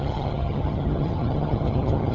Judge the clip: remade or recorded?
remade